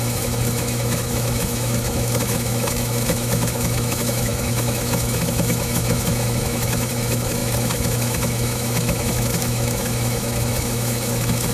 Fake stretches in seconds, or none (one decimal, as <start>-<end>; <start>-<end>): 0.0-11.5